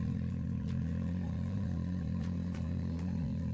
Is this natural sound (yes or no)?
no